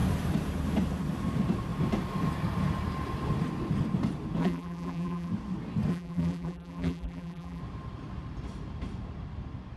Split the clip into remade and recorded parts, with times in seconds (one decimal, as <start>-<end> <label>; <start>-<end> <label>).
0.0-4.4 recorded; 4.4-5.3 remade; 5.3-5.9 recorded; 5.9-7.6 remade; 7.6-9.8 recorded

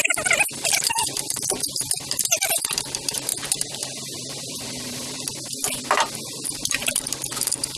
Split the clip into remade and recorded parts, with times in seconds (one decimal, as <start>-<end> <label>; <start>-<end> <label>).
0.0-7.8 remade